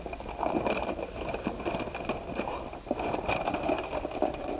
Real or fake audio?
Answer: fake